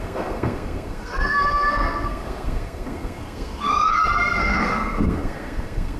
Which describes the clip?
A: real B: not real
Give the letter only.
B